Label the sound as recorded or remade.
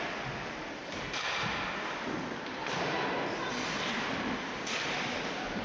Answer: recorded